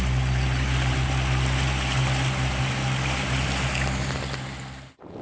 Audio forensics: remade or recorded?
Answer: recorded